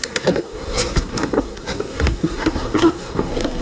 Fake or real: fake